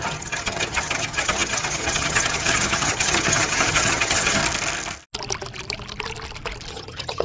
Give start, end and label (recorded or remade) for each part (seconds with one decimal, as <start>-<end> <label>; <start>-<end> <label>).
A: 0.0-4.4 remade; 4.4-6.7 recorded; 6.7-7.2 remade